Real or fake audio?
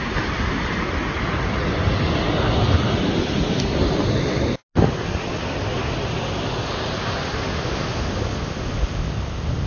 real